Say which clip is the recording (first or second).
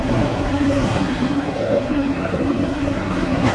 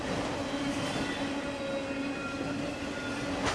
second